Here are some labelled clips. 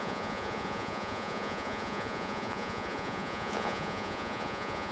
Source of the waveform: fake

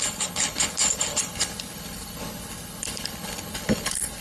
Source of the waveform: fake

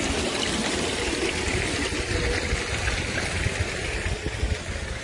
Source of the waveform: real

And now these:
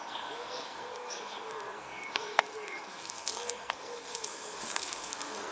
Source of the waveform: fake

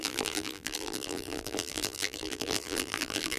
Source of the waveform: fake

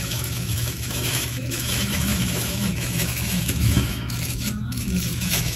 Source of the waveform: fake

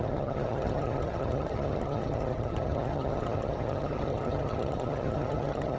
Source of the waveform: fake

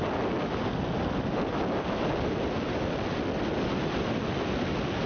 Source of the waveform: real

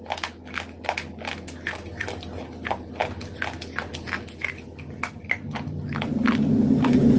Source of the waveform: real